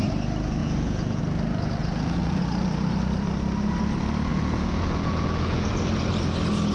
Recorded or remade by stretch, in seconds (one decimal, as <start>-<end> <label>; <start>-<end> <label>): 0.0-0.6 recorded; 0.6-1.2 remade; 1.2-1.8 recorded; 1.8-2.4 remade; 2.4-4.3 recorded; 4.3-5.7 remade; 5.7-6.7 recorded